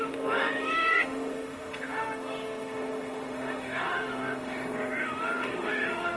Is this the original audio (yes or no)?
no